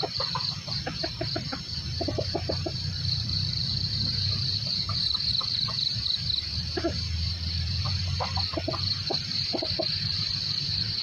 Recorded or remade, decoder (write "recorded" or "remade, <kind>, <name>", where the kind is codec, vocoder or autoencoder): remade, vocoder, BigVGAN v2